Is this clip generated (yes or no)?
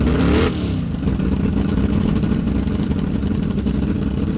no